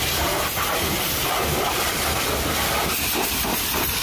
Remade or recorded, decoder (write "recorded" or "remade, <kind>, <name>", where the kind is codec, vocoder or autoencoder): recorded